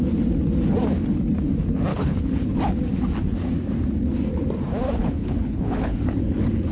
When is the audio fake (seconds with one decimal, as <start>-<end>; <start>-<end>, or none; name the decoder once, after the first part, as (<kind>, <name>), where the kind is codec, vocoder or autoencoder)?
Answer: 1.9-2.6 (codec, HILCodec); 5.0-6.0